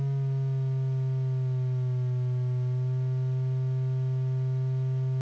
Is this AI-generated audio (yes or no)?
no